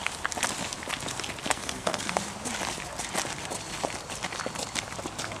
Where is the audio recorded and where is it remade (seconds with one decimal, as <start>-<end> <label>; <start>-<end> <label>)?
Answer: 0.0-1.4 recorded; 1.4-2.2 remade; 2.2-5.4 recorded